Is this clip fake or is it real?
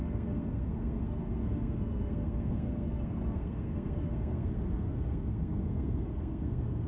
fake